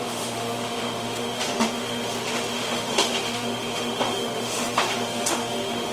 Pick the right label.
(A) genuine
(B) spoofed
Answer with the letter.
B